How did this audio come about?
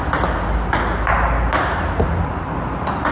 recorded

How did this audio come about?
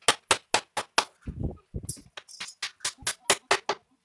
recorded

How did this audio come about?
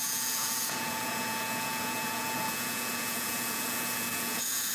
remade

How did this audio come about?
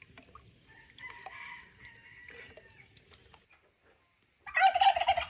recorded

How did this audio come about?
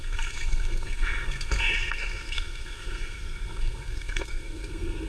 remade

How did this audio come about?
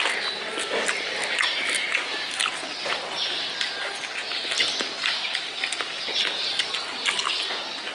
recorded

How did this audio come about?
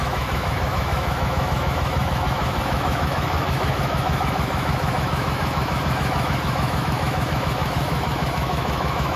remade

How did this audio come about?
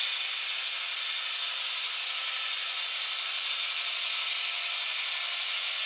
recorded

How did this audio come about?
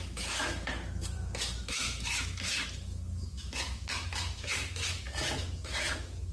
remade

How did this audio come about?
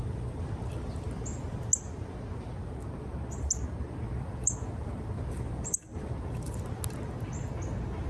recorded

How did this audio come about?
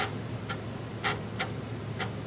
recorded